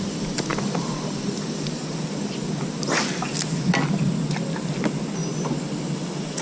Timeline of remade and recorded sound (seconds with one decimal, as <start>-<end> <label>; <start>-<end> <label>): 0.0-6.4 recorded